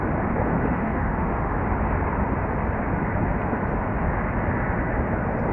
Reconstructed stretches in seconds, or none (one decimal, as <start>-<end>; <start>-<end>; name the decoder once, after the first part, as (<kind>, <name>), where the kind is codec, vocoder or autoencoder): 0.5-1.6 (autoencoder, DAC-VAE)